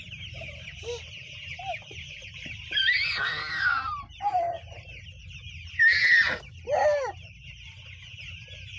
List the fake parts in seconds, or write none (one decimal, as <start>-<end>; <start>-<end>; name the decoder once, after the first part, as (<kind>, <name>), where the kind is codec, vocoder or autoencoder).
none